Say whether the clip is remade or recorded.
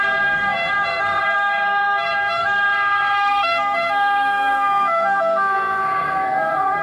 remade